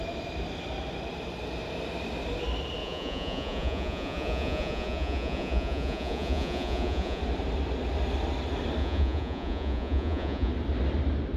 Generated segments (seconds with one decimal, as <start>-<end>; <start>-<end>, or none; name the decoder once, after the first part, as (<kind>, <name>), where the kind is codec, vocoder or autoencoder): 2.8-7.2 (vocoder, Vocos); 8.8-10.5